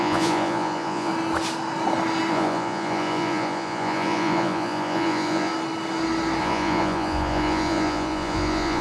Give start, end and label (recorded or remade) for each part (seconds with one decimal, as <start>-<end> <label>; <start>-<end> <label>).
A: 0.0-1.1 remade; 1.1-2.3 recorded; 2.3-5.5 remade; 5.5-6.4 recorded; 6.4-8.8 remade